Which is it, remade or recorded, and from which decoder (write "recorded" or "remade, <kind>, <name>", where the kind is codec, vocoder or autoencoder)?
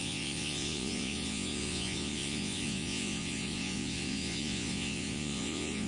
remade, vocoder, Vocos